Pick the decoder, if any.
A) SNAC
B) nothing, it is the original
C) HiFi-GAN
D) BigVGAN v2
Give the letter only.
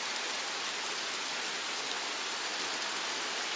B